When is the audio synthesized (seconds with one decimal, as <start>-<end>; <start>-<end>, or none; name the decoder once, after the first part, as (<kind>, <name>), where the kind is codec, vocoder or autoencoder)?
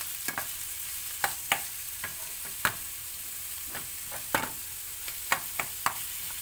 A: 0.0-4.9 (vocoder, BigVGAN v2); 5.6-6.4